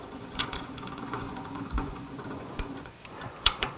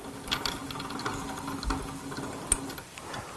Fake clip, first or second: first